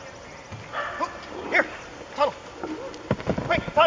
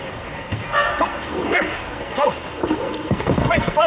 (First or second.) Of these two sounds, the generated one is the second